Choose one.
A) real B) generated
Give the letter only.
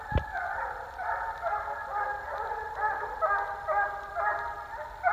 A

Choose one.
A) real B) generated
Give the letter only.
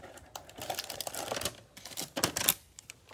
A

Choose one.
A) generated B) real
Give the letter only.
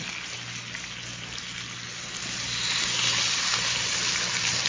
B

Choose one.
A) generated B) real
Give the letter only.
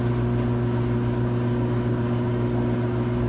B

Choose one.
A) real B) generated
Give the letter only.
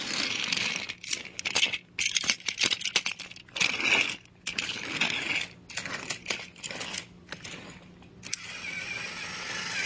A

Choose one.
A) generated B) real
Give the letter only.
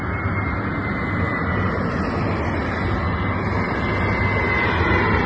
B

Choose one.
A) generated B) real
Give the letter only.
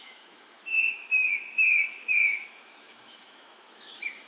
A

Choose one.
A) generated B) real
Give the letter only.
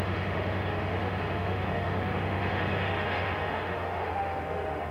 A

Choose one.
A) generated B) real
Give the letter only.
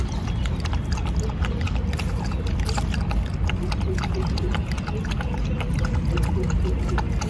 B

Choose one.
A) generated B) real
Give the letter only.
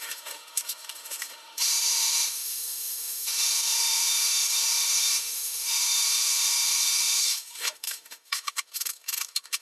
A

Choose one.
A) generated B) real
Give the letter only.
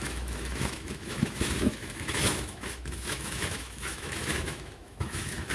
A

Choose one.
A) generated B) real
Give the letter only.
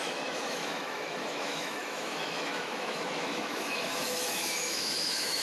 A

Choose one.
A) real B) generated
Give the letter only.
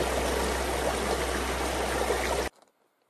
A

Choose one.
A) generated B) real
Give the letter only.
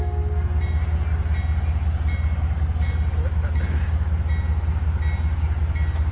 B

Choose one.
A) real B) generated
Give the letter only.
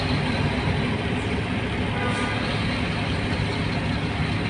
A